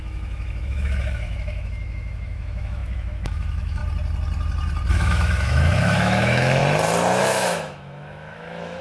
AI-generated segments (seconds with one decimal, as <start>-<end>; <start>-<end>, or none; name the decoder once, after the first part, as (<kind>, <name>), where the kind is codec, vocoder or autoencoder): 0.0-3.8 (autoencoder, DAC-VAE); 4.9-6.6; 7.2-8.8